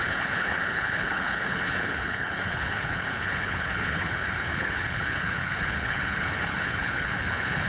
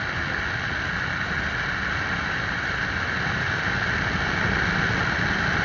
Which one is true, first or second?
second